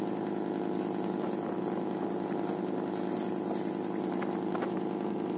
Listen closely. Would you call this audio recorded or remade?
recorded